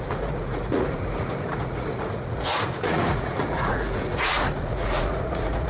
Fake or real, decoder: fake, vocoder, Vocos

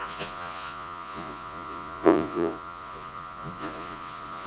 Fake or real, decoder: fake, vocoder, Vocos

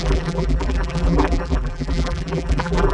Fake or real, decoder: fake, vocoder, BigVGAN v2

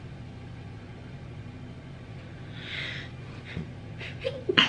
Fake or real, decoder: fake, vocoder, Vocos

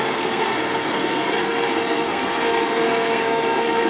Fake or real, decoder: fake, codec, SNAC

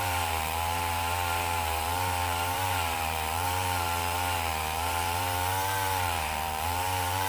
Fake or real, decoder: fake, vocoder, BigVGAN v2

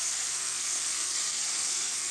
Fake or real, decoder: fake, codec, SNAC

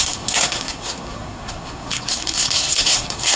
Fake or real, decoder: fake, codec, SNAC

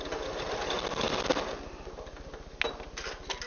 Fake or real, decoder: real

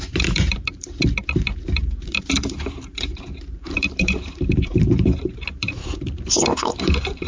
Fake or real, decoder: fake, vocoder, BigVGAN v2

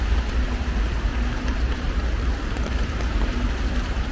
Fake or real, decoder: fake, vocoder, BigVGAN v2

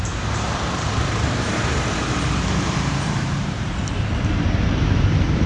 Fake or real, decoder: fake, vocoder, BigVGAN v2